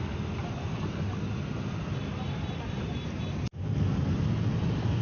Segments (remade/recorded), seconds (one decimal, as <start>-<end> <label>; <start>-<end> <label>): 0.0-0.4 recorded; 0.4-1.0 remade; 1.0-5.0 recorded